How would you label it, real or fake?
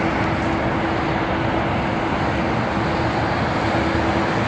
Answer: real